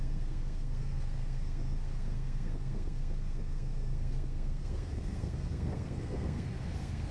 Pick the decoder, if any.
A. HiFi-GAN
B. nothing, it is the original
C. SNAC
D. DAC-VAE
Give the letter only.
C